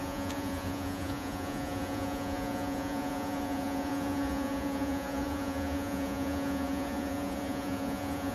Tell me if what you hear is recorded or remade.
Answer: remade